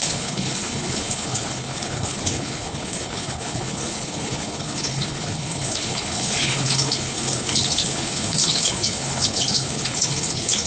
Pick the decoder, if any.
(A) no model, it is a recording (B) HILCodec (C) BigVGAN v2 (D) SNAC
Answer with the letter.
B